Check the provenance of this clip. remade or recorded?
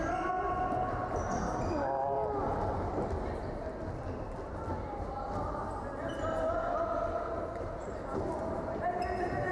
recorded